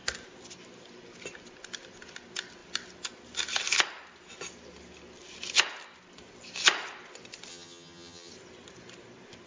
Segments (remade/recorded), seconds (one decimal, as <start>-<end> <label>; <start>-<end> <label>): 0.0-7.5 recorded; 7.5-8.3 remade; 8.3-9.5 recorded